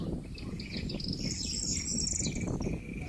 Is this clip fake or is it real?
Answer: real